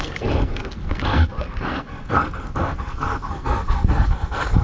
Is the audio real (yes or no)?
no